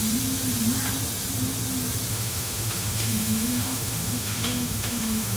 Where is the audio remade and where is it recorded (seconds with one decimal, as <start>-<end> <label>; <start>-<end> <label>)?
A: 0.0-2.1 recorded; 2.1-5.4 remade